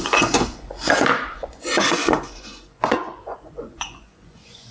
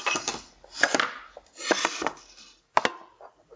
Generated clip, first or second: first